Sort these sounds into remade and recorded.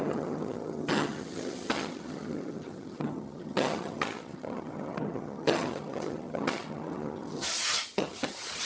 remade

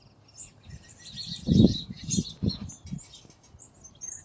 recorded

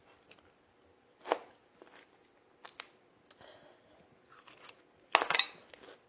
recorded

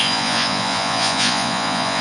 remade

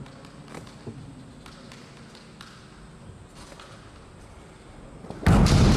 recorded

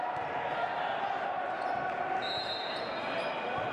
recorded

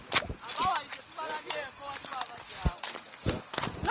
recorded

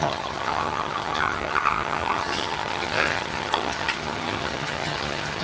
remade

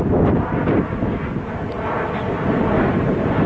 recorded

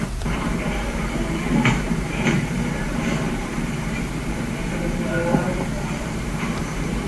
remade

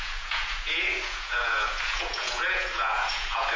remade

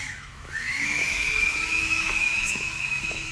remade